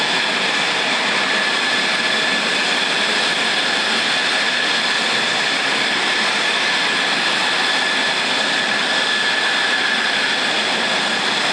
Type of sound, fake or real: real